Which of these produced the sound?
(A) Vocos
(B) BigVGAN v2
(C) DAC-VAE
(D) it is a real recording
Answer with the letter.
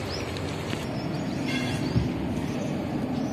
D